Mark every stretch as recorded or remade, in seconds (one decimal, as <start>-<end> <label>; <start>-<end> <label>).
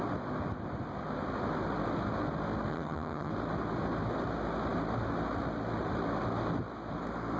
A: 0.0-2.7 recorded; 2.7-3.3 remade; 3.3-7.4 recorded